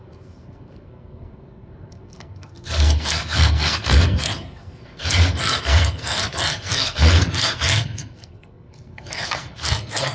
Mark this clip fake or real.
fake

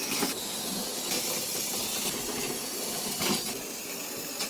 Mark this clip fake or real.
real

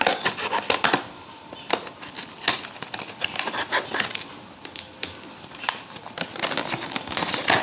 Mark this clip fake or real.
real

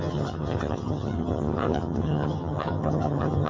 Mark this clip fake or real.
fake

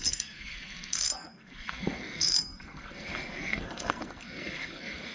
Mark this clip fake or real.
fake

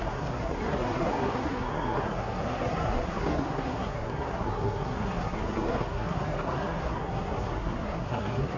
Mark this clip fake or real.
fake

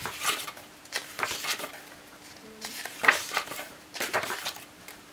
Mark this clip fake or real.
fake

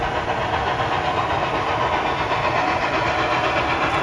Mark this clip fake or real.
real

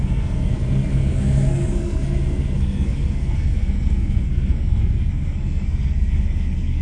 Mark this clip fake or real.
fake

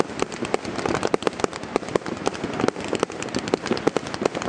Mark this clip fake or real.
real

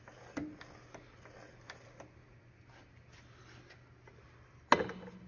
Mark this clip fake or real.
real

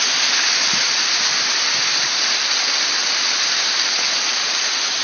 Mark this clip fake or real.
fake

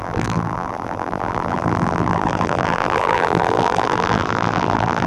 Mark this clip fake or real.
fake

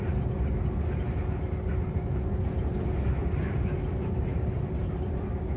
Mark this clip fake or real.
real